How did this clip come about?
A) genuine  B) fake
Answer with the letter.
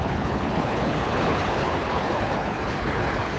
B